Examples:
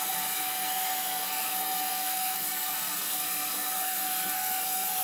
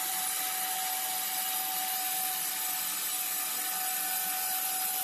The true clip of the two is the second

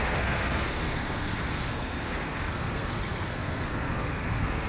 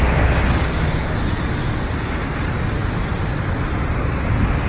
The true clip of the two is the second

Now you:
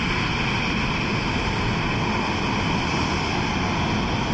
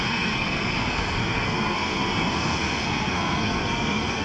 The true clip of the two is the first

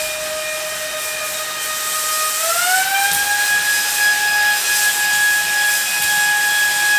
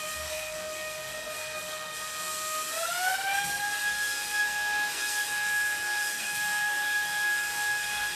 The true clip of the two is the first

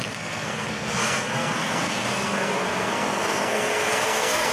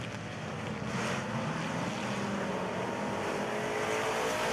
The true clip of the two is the second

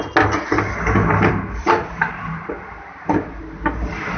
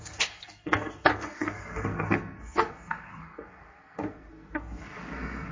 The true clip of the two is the first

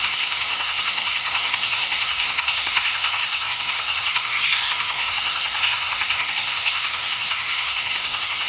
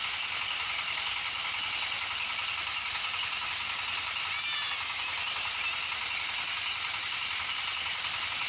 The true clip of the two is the second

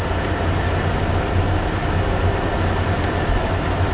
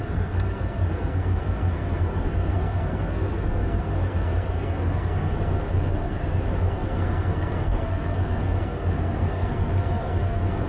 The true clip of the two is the first